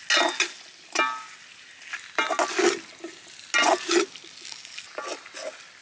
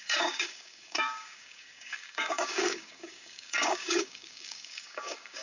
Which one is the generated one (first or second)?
second